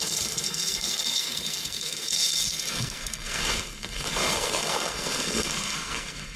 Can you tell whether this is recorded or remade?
remade